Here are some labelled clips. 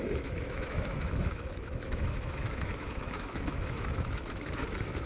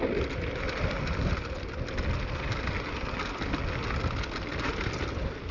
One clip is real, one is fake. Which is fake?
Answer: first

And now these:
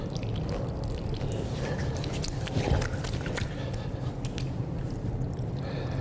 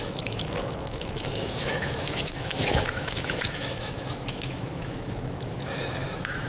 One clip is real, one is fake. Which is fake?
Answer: second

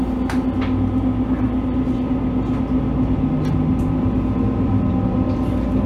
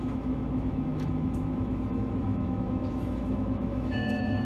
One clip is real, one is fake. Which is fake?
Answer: second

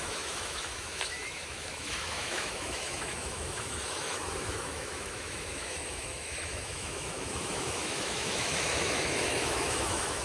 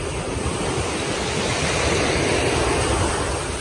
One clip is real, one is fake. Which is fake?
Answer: first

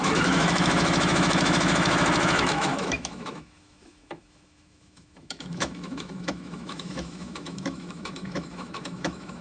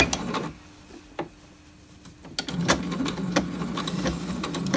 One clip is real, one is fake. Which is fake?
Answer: first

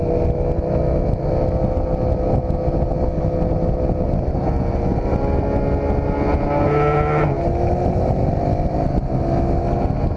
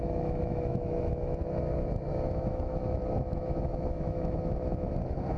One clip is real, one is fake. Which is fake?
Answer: second